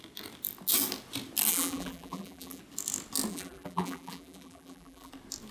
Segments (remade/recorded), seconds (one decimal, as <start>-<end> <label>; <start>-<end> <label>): 0.0-1.5 recorded; 1.5-2.6 remade; 2.6-3.3 recorded; 3.3-5.1 remade; 5.1-5.5 recorded